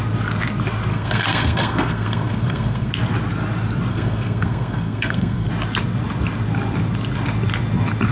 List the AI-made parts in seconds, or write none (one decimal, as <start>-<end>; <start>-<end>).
0.9-2.9; 3.9-5.5